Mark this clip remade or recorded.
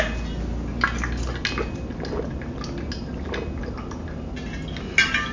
recorded